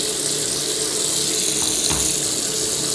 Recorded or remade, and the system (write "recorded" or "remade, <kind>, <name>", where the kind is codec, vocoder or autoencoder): recorded